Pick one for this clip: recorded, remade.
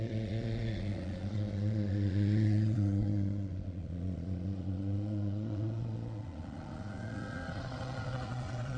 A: remade